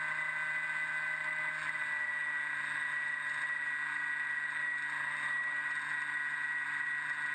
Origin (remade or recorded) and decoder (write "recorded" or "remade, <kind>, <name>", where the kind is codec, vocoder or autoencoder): recorded